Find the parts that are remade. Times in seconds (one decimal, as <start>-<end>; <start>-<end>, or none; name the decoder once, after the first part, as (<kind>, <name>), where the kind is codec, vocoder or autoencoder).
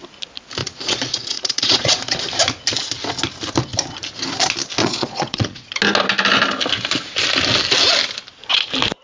0.6-2.2 (vocoder, Vocos); 4.8-5.8